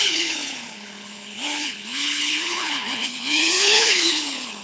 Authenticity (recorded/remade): remade